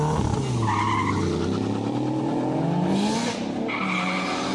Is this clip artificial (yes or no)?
no